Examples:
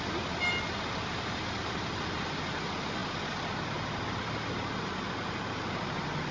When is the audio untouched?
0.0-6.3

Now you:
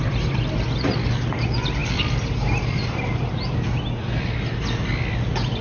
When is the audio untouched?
0.0-5.6